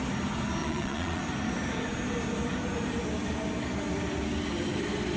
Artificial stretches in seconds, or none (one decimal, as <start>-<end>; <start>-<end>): 0.6-1.2